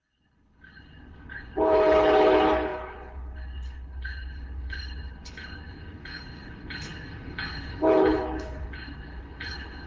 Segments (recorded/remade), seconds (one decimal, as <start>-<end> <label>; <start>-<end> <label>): 0.0-9.9 remade